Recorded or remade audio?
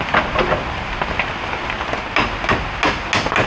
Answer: recorded